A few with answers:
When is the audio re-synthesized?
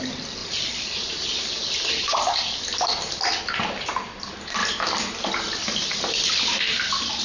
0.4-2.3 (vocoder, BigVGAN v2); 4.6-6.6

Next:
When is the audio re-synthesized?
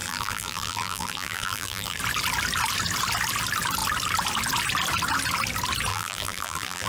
0.0-2.0 (vocoder, BigVGAN v2); 5.9-6.9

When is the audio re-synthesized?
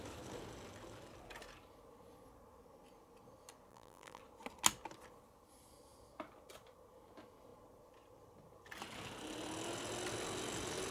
3.7-4.2 (vocoder, BigVGAN v2)